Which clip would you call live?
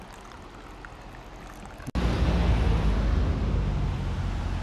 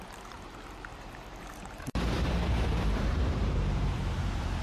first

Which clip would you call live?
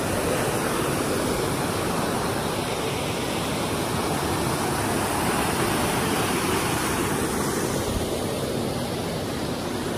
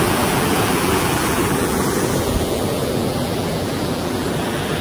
first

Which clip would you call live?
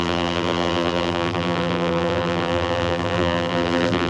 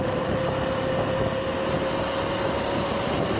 second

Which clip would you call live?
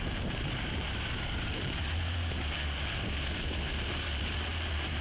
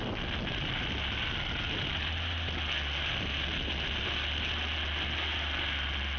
second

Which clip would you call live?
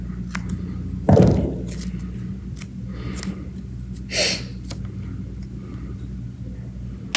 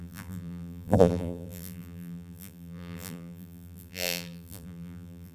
first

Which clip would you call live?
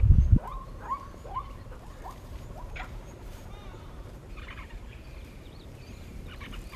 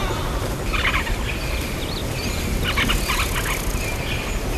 second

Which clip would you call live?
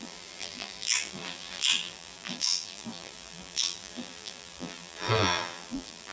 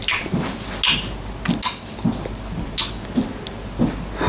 second